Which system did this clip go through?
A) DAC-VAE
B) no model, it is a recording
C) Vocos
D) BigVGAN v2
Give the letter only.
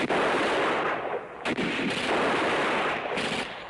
B